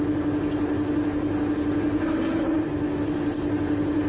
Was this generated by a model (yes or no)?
no